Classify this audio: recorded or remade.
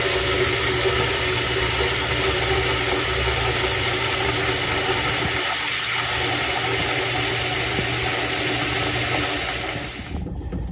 recorded